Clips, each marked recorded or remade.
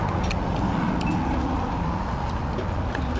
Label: recorded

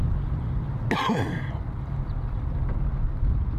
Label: recorded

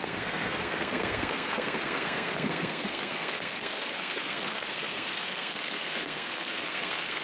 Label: remade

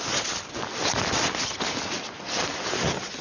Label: recorded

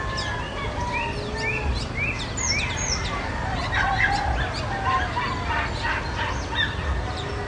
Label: recorded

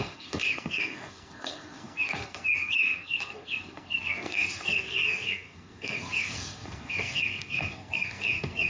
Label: remade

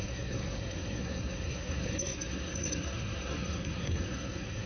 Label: remade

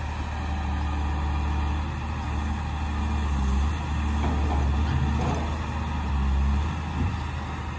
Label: recorded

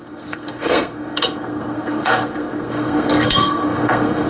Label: remade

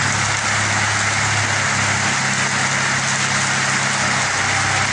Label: recorded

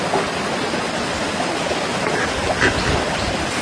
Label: recorded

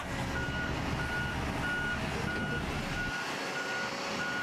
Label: recorded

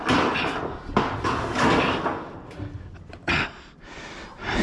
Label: recorded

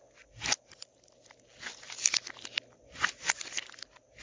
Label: recorded